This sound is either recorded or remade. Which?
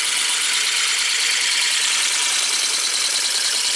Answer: recorded